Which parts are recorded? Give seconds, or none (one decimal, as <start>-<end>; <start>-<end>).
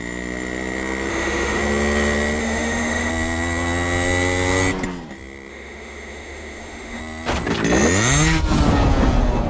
0.0-1.1; 1.6-2.4; 3.1-5.5; 7.0-9.5